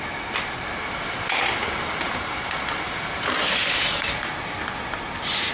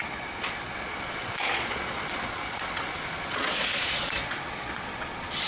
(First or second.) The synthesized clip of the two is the second